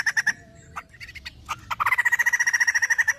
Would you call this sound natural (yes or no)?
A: yes